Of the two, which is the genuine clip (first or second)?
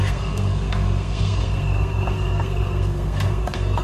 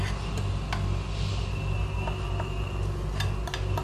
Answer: second